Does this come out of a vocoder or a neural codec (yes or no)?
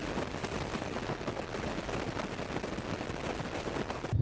no